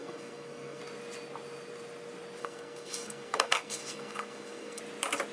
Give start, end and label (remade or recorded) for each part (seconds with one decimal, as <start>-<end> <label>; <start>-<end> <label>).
0.0-0.8 remade; 0.8-2.4 recorded; 2.4-4.8 remade; 4.8-5.3 recorded